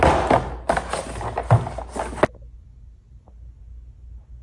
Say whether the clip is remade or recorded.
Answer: recorded